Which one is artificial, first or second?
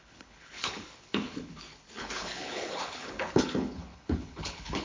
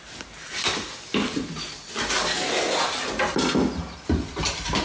first